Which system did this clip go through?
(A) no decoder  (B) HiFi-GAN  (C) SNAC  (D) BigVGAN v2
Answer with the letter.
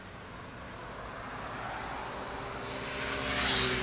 A